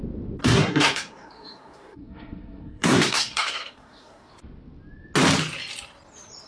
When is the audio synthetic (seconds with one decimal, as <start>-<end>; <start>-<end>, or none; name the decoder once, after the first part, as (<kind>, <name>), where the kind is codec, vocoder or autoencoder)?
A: 0.4-4.3 (codec, SNAC)